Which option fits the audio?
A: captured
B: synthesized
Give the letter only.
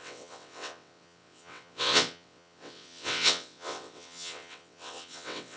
B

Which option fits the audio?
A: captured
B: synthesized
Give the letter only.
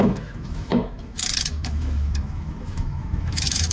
B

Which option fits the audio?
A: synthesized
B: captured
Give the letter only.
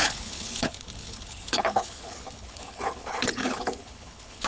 A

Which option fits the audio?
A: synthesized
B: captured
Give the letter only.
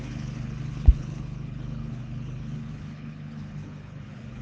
A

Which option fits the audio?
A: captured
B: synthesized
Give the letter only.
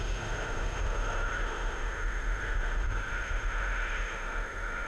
B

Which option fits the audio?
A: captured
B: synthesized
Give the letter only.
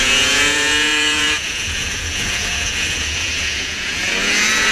B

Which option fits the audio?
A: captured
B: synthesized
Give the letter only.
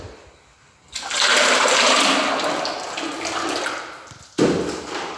A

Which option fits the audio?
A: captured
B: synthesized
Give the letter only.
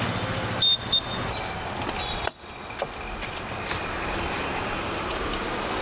A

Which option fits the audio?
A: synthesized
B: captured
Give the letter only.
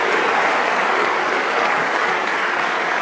A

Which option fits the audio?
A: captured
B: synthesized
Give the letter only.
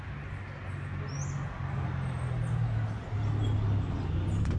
A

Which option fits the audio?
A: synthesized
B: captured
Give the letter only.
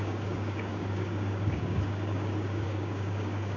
A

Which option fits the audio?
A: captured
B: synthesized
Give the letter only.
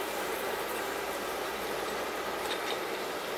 B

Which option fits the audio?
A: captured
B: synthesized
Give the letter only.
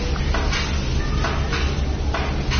A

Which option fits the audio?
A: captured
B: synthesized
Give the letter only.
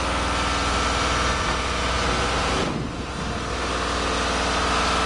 A